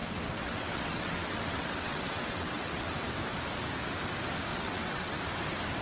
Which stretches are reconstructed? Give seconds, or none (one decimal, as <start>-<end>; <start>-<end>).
0.0-2.9; 4.5-5.2